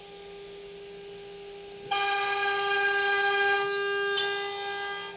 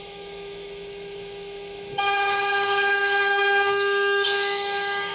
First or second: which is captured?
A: first